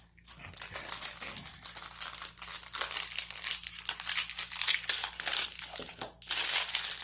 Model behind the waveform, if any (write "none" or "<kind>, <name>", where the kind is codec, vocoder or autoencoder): none